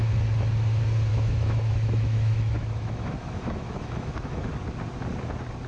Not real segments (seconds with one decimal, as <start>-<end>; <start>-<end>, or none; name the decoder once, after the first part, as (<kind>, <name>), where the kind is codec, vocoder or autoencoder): 1.1-4.5 (autoencoder, DAC-VAE)